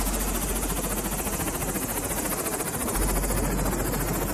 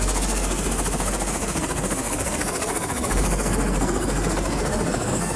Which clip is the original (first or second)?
first